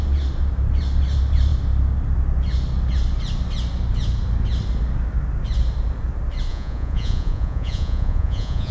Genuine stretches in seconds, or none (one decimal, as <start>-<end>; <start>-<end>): 0.0-6.5